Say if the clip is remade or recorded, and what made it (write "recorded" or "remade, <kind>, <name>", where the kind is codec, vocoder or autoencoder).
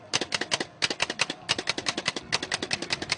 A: recorded